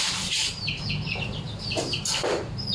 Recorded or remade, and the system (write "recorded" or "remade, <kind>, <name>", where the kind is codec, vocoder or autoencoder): remade, vocoder, BigVGAN v2